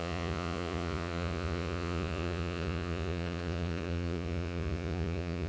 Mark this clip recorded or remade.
remade